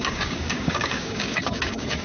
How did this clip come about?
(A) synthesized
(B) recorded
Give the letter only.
A